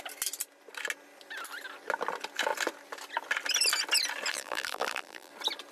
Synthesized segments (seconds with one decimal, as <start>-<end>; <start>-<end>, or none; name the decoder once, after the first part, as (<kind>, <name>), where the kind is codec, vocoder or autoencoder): 4.3-5.3 (vocoder, BigVGAN v2)